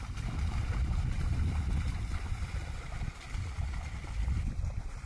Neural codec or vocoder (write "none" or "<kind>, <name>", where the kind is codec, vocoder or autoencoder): vocoder, BigVGAN v2